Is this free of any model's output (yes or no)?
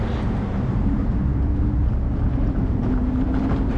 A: no